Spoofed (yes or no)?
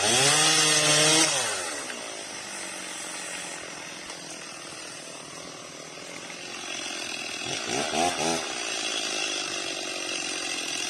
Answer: no